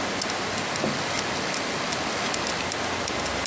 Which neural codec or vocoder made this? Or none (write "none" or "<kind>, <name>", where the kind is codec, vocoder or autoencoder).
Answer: none